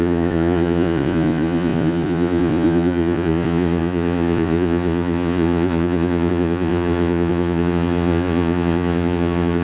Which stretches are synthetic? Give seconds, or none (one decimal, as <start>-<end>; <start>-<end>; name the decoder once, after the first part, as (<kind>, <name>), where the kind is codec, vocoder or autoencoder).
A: 0.0-9.6 (vocoder, Vocos)